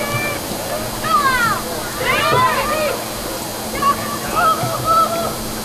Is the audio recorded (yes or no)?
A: yes